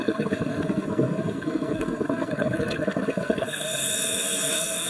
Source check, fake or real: fake